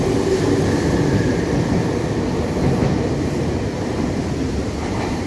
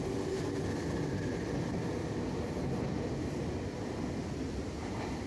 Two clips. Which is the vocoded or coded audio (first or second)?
first